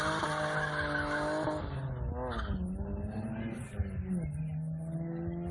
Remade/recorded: recorded